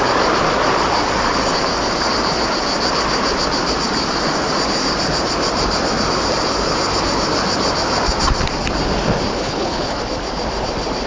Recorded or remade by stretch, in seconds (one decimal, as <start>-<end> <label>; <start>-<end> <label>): 0.0-9.3 recorded; 9.3-10.0 remade; 10.0-11.1 recorded